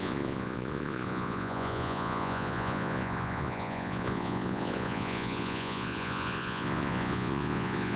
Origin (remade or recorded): remade